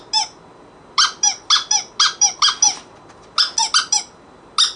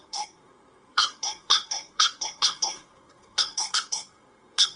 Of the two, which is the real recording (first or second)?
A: first